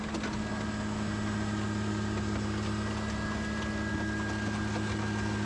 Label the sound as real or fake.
real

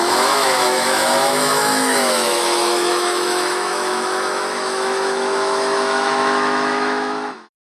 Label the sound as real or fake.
fake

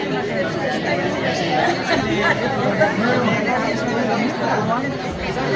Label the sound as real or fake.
real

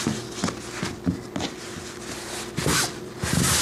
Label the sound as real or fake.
real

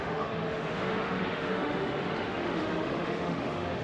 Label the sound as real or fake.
fake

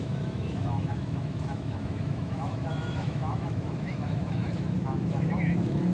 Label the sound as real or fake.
fake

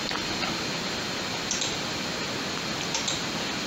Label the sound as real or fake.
real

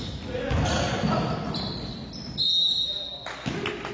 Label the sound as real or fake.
real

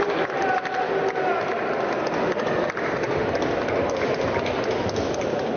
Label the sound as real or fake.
real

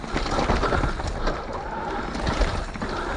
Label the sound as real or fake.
real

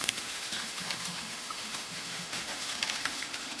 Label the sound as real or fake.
fake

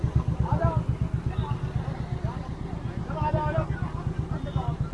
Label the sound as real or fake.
real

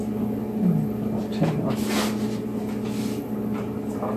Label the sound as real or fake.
real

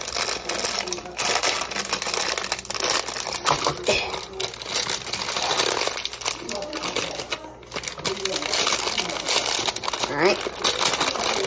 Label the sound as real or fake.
real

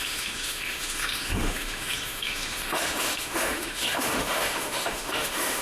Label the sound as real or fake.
fake